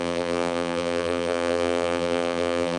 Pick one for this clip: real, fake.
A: fake